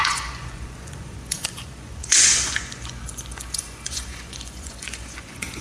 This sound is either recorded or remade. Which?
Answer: remade